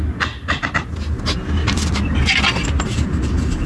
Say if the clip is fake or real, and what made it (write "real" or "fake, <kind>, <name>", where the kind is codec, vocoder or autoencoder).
real